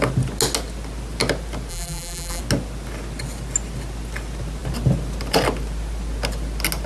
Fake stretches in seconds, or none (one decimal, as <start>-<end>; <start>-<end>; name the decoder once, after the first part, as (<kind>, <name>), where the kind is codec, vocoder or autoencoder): 1.7-2.4 (vocoder, BigVGAN v2)